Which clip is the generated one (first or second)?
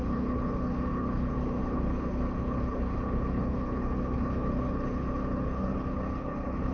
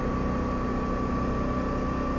first